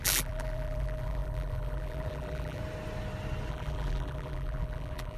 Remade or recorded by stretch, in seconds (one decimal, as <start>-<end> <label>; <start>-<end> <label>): 0.0-2.6 remade; 2.6-3.5 recorded; 3.5-5.2 remade